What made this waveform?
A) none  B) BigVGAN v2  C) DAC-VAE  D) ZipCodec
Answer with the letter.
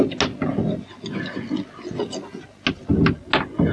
A